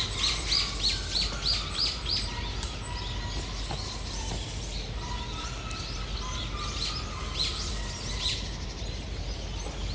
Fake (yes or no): no